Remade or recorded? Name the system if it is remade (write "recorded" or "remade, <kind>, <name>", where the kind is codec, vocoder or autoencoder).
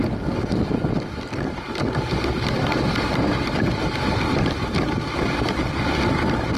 recorded